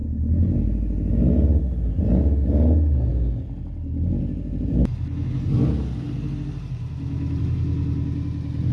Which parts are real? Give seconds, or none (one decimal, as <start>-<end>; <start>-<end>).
0.0-8.7